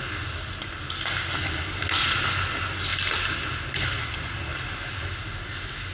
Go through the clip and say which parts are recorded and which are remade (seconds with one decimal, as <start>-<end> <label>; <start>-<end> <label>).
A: 0.0-5.9 recorded